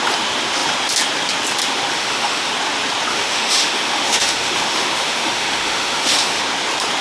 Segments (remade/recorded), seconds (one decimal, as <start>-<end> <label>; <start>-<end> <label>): 0.0-1.9 recorded; 1.9-2.5 remade; 2.5-3.1 recorded; 3.1-6.4 remade; 6.4-7.0 recorded